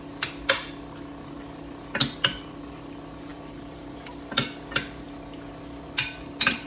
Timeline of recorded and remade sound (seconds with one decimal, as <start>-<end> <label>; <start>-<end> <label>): 0.0-3.3 recorded; 3.3-4.3 remade; 4.3-6.7 recorded